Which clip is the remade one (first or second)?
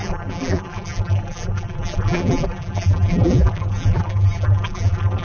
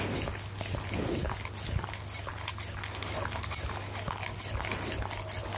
first